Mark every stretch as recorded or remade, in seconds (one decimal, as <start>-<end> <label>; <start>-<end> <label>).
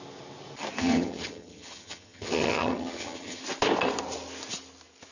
0.0-0.8 recorded; 0.8-3.4 remade; 3.4-5.1 recorded